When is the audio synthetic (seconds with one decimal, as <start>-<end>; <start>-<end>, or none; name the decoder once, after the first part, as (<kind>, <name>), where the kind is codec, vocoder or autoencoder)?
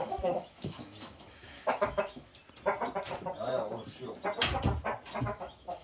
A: 0.0-2.3 (autoencoder, DAC-VAE); 5.2-5.8